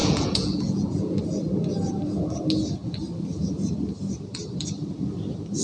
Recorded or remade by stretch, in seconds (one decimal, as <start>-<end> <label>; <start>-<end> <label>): 0.0-1.2 remade; 1.2-5.6 recorded